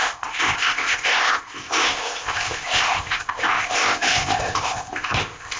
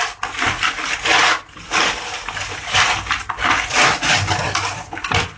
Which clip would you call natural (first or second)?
second